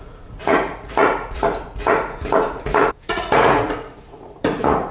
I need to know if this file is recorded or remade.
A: remade